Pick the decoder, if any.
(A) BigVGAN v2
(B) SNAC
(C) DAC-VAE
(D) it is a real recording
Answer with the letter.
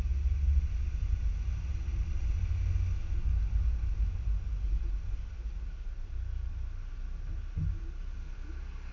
D